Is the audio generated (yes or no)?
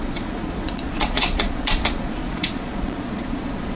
yes